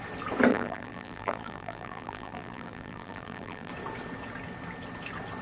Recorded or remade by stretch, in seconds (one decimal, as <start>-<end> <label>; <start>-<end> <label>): 0.0-0.5 recorded; 0.5-3.7 remade; 3.7-5.4 recorded